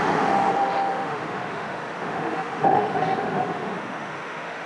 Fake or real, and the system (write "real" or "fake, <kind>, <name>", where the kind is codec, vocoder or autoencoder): fake, autoencoder, DAC-VAE